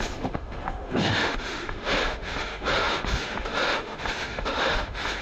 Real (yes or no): no